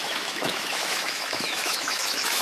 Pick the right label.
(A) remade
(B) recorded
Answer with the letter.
A